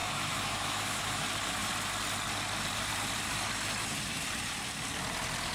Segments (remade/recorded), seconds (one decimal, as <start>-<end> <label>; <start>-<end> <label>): 0.0-1.2 remade; 1.2-5.5 recorded